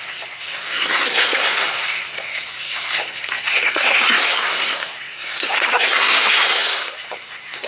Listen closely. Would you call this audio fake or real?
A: fake